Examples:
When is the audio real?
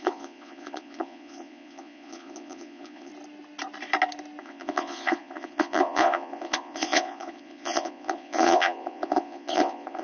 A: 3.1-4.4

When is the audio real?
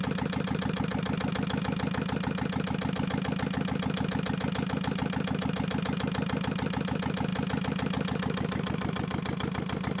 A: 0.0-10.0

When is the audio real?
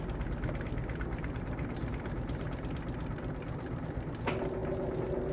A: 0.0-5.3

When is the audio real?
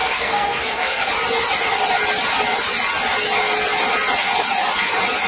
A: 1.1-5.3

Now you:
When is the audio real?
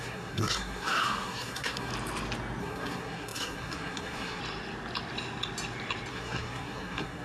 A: 1.9-2.6; 4.4-6.1